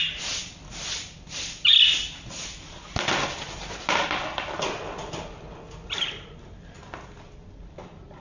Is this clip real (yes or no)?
yes